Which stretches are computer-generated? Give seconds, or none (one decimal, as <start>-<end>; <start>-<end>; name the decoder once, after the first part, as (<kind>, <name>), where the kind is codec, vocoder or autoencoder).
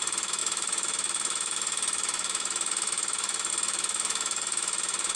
0.0-5.2 (autoencoder, DAC-VAE)